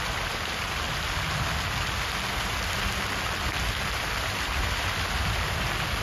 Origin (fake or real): real